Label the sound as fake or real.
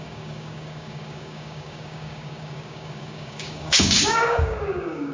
fake